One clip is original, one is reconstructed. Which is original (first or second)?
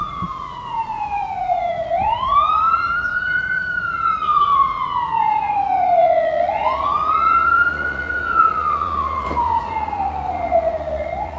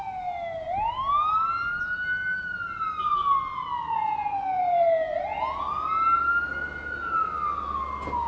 second